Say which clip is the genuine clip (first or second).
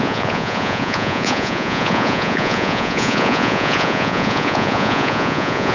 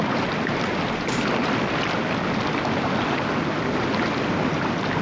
second